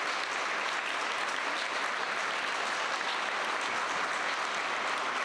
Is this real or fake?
real